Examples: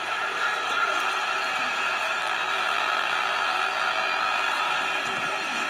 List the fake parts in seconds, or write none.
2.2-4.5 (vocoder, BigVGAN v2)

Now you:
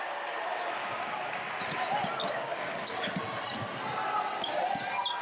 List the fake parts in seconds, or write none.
0.8-1.3 (codec, DAC); 2.2-3.1

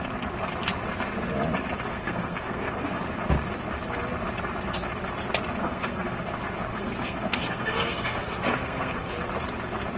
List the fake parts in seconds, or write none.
1.9-3.0 (codec, SNAC); 5.6-6.2; 6.7-9.1

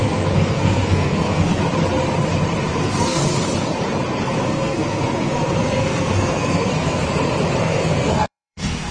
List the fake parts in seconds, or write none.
0.0-1.6 (codec, SNAC); 2.7-3.2; 4.2-7.0; 7.6-8.9

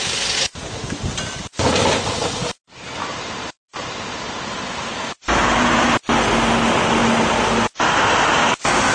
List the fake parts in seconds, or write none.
3.0-6.0 (vocoder, BigVGAN v2)

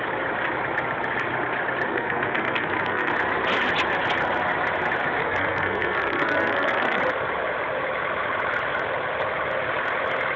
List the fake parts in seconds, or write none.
1.9-3.1 (codec, SNAC); 5.2-7.0

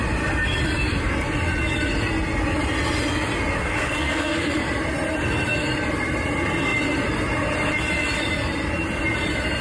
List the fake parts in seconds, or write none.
3.6-4.6 (codec, SNAC)

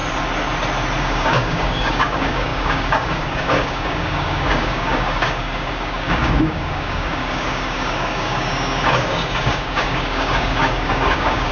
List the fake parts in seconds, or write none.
1.0-11.5 (codec, DAC)